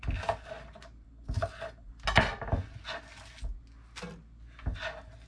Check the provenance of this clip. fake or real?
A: real